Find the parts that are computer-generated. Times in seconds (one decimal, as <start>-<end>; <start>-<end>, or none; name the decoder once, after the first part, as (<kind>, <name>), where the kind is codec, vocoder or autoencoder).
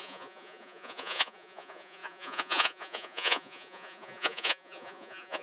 0.0-5.4 (vocoder, Vocos)